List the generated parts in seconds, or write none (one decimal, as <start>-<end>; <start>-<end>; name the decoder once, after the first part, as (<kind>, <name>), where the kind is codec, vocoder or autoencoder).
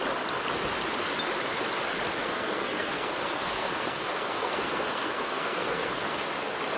2.2-6.3 (codec, SNAC)